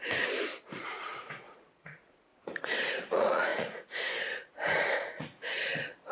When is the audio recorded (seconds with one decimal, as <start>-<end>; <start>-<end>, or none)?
2.3-2.9